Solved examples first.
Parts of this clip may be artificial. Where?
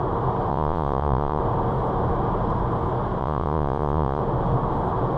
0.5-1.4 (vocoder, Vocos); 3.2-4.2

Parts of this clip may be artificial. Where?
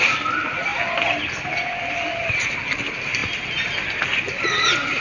0.7-1.2 (vocoder, BigVGAN v2)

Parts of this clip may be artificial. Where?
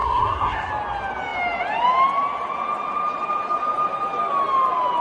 0.0-0.7 (codec, SNAC)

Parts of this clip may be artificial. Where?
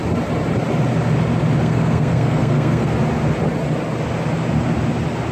1.6-2.9 (codec, SNAC)